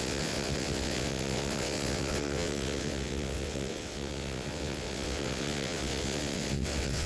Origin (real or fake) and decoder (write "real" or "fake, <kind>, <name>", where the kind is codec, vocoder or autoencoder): fake, vocoder, WaveNeXt